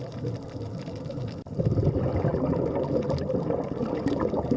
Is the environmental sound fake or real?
real